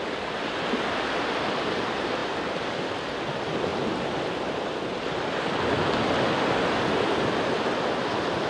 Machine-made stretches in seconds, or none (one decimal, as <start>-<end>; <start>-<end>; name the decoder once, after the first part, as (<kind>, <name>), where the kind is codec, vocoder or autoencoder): 2.2-3.3 (vocoder, BigVGAN v2)